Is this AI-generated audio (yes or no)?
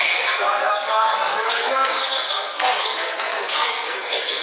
yes